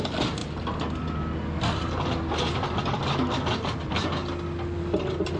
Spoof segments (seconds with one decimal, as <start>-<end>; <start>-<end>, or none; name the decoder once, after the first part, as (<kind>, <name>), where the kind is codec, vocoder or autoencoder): none